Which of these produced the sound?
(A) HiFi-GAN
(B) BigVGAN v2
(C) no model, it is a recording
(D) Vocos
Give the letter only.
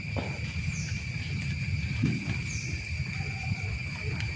C